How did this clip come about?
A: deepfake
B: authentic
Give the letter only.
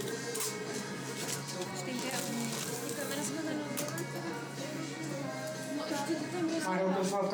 B